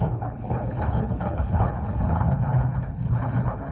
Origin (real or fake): fake